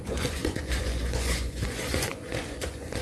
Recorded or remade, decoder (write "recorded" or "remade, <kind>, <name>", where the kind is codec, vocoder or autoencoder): remade, vocoder, Vocos